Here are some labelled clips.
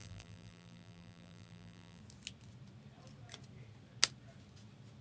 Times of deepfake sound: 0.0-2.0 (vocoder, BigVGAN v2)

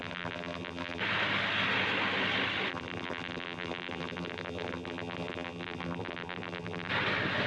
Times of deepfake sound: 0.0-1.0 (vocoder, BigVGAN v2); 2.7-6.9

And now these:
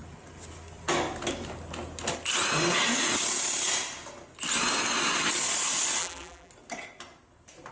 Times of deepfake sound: 6.0-6.5 (vocoder, BigVGAN v2)

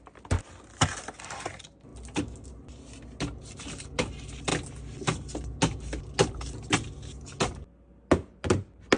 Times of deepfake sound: none

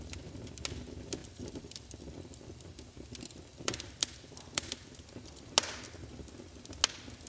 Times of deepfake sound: 1.2-2.1 (vocoder, BigVGAN v2); 3.5-5.5